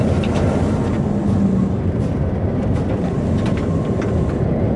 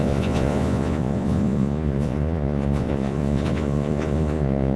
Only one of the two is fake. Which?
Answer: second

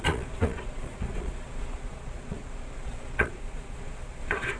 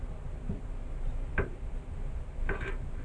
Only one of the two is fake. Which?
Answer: first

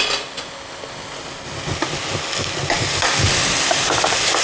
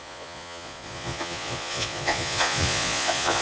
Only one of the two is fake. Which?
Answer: second